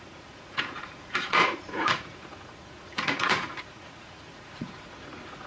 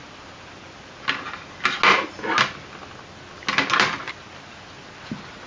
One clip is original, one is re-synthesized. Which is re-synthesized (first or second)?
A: first